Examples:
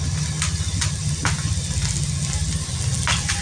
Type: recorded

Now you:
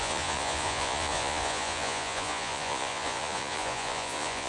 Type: remade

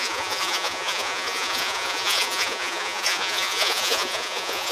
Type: remade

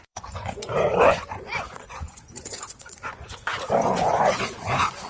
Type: remade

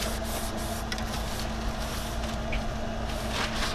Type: recorded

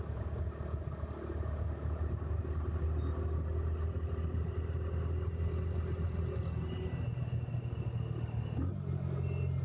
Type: recorded